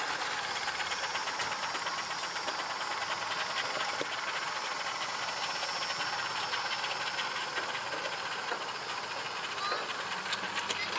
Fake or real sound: real